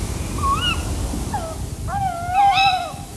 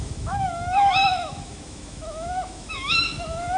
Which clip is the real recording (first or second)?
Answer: first